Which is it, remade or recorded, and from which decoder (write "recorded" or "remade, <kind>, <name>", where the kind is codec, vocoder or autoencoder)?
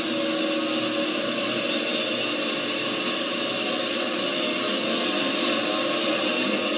recorded